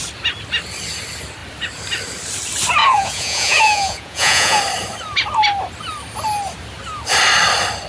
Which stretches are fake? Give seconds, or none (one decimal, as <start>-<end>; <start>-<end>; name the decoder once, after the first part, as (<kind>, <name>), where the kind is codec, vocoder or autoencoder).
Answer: 2.8-4.6 (vocoder, Vocos)